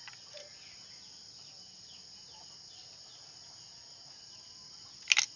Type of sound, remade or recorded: recorded